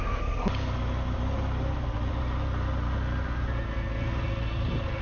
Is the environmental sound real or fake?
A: real